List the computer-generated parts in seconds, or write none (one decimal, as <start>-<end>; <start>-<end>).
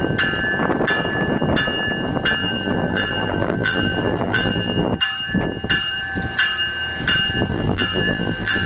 2.4-4.9; 7.5-8.7